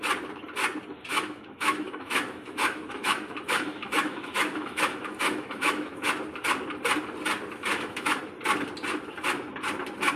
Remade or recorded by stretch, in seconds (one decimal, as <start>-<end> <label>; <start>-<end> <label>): 0.0-1.1 recorded; 1.1-6.1 remade; 6.1-7.7 recorded; 7.7-8.2 remade; 8.2-10.2 recorded